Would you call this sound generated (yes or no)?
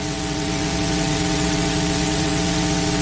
yes